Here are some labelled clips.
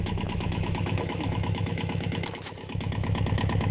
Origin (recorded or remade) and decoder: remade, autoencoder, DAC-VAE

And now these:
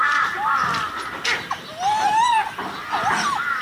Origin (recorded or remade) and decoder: recorded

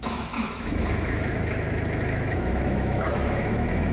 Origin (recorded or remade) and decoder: remade, autoencoder, DAC-VAE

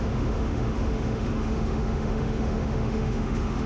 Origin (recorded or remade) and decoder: remade, autoencoder, DAC-VAE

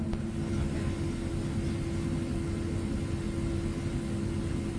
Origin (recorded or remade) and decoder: recorded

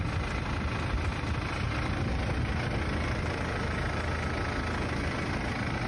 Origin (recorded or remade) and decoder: recorded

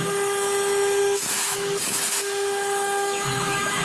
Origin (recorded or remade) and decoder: remade, autoencoder, DAC-VAE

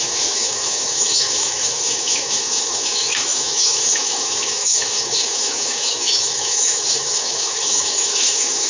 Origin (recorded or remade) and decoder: remade, autoencoder, DAC-VAE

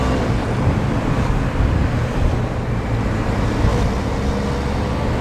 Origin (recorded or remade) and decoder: recorded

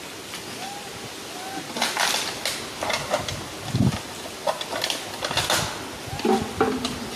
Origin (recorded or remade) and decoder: recorded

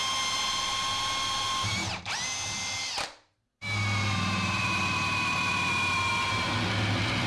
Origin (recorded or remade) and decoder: recorded